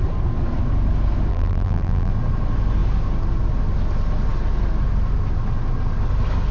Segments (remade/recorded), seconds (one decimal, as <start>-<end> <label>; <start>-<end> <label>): 0.0-1.3 recorded; 1.3-2.1 remade; 2.1-6.5 recorded